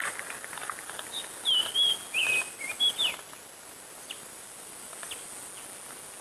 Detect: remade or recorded recorded